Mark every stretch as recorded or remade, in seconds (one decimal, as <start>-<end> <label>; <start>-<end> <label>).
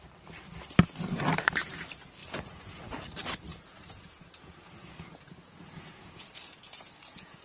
0.0-2.2 recorded; 2.2-2.9 remade; 2.9-3.5 recorded; 3.5-7.4 remade